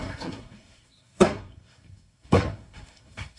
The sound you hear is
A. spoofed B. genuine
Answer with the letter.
A